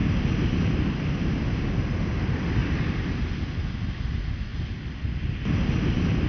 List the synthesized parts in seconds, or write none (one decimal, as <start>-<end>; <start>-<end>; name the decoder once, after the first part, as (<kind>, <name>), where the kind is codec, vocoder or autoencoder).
none